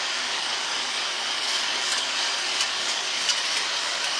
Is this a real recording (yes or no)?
no